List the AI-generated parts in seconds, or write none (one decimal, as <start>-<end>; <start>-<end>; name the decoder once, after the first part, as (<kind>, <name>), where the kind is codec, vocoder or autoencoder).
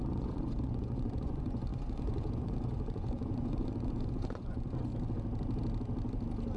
0.0-4.9 (vocoder, Vocos)